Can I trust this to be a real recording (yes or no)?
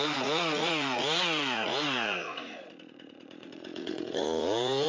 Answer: no